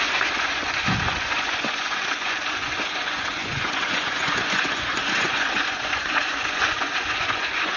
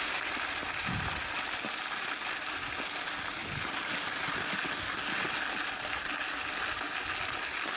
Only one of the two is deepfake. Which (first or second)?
first